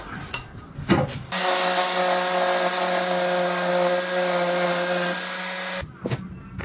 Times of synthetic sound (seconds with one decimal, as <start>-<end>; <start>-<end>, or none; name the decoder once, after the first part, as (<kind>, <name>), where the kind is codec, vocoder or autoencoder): none